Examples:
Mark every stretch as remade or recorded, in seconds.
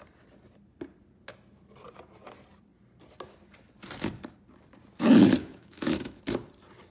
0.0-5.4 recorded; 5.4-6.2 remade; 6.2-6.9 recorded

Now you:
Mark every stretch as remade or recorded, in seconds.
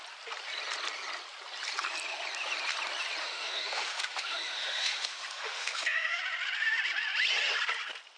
0.0-3.2 recorded; 3.2-6.2 remade; 6.2-8.2 recorded